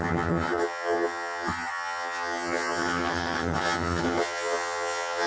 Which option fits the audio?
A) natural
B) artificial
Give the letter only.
B